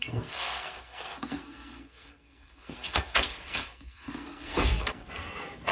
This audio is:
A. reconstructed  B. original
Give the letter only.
A